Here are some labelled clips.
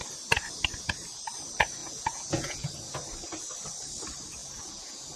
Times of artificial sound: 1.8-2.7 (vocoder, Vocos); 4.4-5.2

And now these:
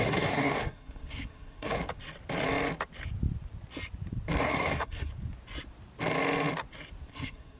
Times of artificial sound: 0.0-1.8 (codec, SNAC); 4.4-5.1; 7.1-7.6

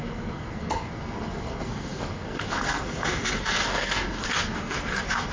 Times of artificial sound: 0.0-5.3 (codec, SNAC)